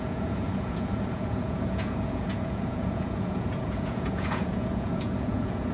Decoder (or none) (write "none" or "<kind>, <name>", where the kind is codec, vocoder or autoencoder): vocoder, Vocos